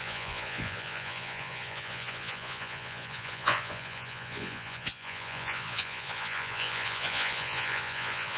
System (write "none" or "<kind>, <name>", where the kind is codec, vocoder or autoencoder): vocoder, Vocos